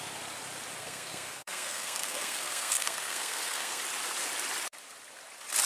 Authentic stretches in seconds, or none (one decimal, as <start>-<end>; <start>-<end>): 0.0-0.8; 3.8-5.7